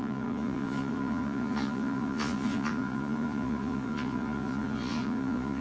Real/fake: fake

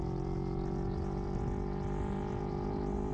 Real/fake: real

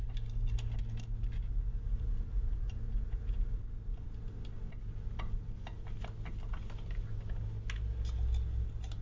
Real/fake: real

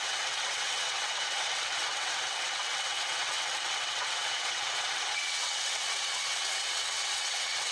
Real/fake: fake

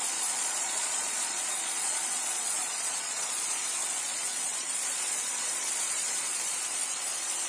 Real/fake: fake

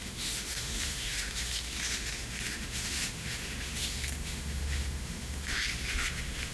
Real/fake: fake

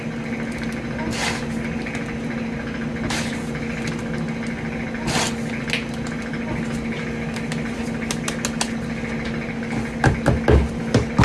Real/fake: real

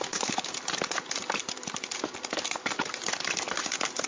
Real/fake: fake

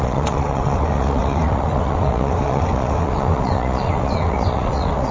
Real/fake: fake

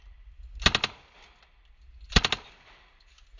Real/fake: real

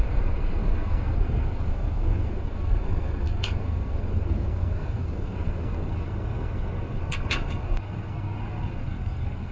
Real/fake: fake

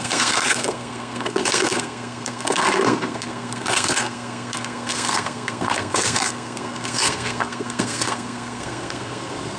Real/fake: fake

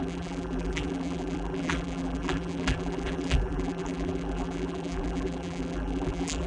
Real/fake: fake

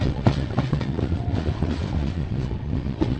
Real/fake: fake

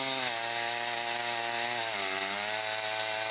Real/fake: real